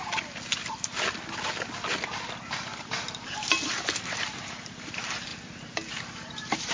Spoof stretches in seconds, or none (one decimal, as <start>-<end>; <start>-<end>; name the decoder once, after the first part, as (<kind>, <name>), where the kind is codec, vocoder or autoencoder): 4.0-5.3 (vocoder, BigVGAN v2); 6.0-6.7